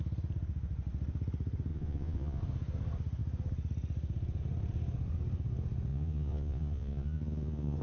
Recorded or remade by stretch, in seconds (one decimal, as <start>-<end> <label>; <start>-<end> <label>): 0.0-1.7 recorded; 1.7-2.4 remade; 2.4-5.9 recorded; 5.9-7.8 remade